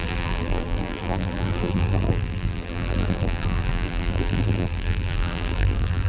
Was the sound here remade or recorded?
remade